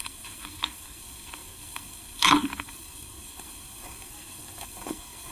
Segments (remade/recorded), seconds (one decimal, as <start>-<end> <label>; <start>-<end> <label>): 0.0-5.3 remade